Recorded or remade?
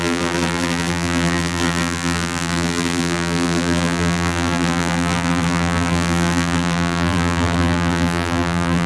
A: remade